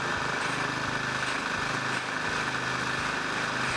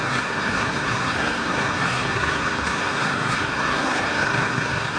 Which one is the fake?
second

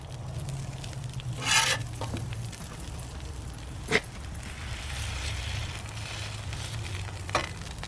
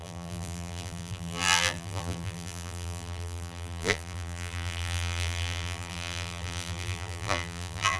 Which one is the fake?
second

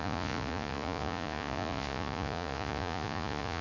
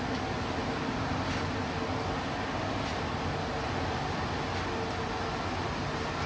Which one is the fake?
first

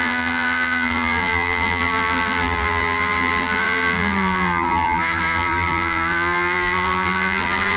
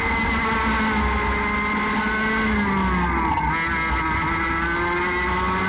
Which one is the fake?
first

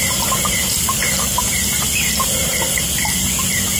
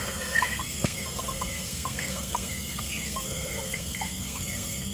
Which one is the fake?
second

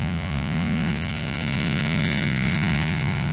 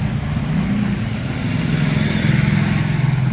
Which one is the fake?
first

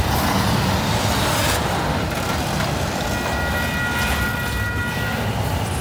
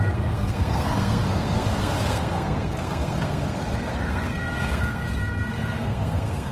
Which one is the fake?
second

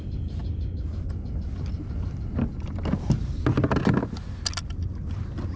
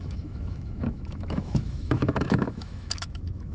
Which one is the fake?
second